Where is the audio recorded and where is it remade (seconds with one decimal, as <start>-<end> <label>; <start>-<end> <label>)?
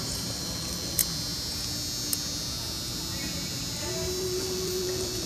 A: 0.0-1.0 remade; 1.0-4.2 recorded; 4.2-5.3 remade